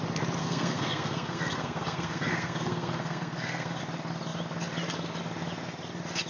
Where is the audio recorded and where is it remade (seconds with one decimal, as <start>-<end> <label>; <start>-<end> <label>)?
0.0-0.4 recorded; 0.4-3.8 remade; 3.8-6.3 recorded